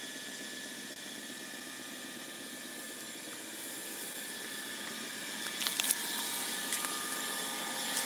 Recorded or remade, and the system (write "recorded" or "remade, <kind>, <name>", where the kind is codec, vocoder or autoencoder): recorded